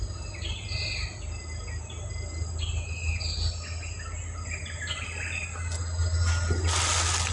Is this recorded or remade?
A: recorded